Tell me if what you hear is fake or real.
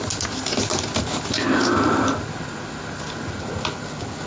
real